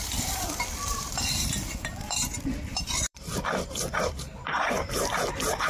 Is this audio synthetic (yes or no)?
yes